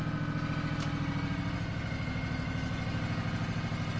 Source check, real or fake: real